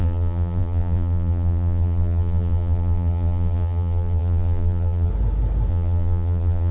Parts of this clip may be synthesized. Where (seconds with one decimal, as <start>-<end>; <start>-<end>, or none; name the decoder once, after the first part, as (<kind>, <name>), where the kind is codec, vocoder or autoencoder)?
0.0-5.1 (vocoder, BigVGAN v2); 5.7-6.7

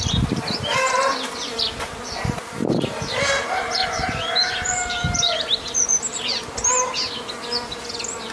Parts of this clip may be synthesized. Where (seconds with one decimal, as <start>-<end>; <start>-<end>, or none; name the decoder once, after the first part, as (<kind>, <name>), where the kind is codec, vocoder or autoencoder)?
2.6-7.1 (vocoder, BigVGAN v2)

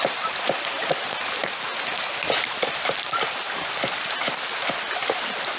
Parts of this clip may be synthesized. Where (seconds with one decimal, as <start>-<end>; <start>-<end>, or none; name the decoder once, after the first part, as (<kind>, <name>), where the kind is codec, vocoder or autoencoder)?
none

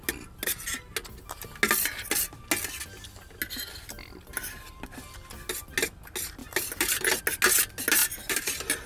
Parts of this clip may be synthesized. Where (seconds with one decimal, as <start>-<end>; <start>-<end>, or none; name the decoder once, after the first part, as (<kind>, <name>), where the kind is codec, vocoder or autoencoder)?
6.4-7.2 (vocoder, BigVGAN v2); 8.0-8.9

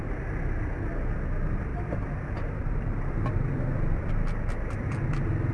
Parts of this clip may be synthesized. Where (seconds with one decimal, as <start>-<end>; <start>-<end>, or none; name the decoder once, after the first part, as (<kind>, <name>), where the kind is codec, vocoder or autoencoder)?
1.7-4.1 (vocoder, BigVGAN v2)

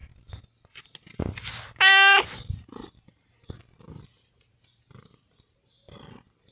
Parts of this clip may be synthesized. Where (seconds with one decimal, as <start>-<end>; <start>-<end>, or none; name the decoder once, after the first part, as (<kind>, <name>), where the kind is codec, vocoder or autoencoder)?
none

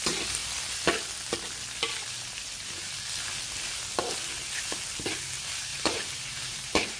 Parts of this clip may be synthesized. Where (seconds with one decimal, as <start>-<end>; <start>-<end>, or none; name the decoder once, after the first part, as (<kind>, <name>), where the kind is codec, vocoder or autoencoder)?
5.7-7.0 (vocoder, BigVGAN v2)